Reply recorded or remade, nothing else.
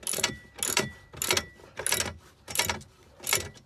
recorded